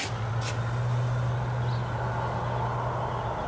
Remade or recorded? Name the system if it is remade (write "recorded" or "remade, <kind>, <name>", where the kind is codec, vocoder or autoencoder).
recorded